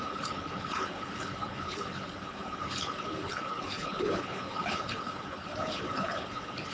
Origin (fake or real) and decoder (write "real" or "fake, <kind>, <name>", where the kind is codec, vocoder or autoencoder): fake, codec, HILCodec